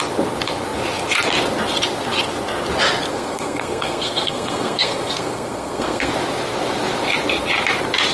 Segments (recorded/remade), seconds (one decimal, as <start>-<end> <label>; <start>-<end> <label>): 0.0-3.1 recorded; 3.1-6.1 remade; 6.1-8.1 recorded